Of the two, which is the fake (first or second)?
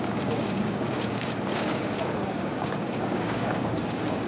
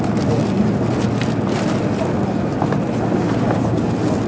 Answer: first